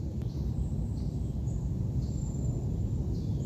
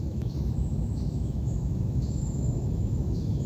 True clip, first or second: first